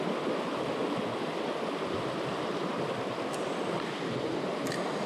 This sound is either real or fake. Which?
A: real